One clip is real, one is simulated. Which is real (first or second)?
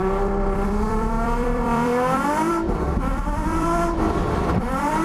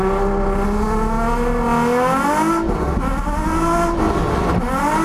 second